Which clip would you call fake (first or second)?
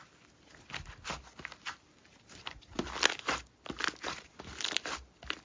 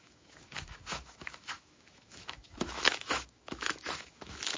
second